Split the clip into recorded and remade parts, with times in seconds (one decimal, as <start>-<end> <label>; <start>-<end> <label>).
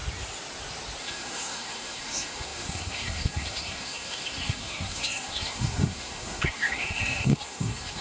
0.0-1.0 recorded; 1.0-8.0 remade